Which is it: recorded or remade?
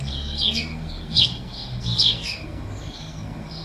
remade